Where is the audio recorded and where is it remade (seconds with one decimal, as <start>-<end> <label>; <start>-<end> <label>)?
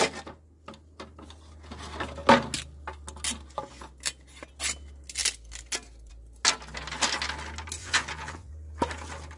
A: 0.0-7.8 recorded; 7.8-8.5 remade; 8.5-9.4 recorded